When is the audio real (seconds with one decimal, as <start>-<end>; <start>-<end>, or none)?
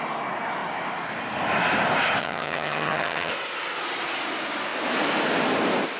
0.0-2.2; 3.3-6.0